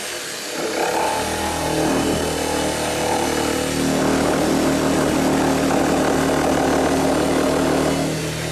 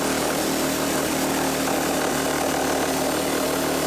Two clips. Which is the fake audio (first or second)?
second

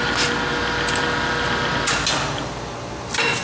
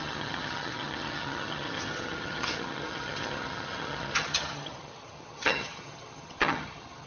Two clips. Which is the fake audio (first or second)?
second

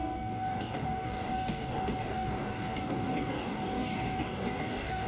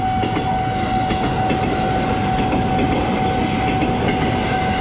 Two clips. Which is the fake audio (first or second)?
first